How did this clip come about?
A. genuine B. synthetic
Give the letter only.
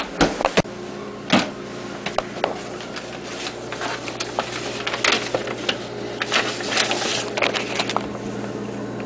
A